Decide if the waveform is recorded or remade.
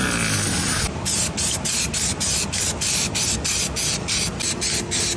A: recorded